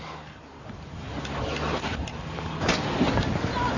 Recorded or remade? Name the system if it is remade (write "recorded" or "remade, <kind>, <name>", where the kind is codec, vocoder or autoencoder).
recorded